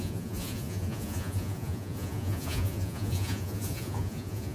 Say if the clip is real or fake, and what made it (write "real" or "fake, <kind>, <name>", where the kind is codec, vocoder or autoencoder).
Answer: fake, vocoder, Vocos